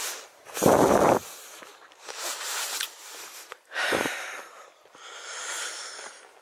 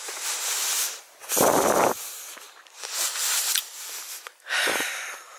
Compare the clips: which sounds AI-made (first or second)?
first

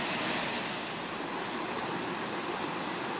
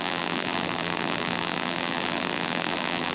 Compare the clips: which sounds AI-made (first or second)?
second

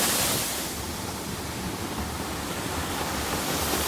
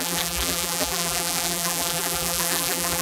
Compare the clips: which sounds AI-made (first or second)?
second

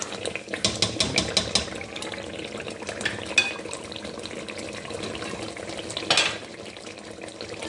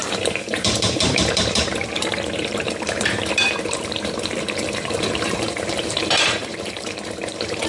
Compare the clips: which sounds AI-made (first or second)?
second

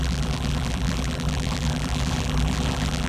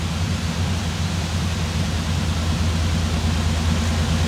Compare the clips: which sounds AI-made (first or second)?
first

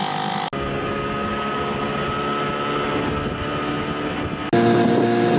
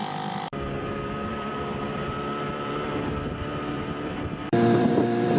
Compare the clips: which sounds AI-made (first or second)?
second